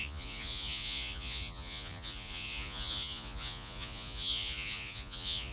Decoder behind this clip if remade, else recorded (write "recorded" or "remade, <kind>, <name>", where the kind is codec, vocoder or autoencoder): remade, vocoder, Vocos